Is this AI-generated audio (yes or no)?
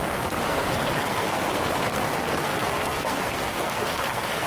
yes